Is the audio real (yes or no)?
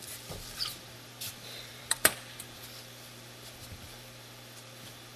no